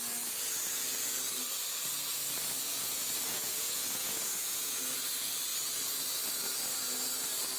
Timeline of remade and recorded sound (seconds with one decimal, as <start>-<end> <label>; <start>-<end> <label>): 0.0-2.6 recorded; 2.6-4.8 remade; 4.8-7.6 recorded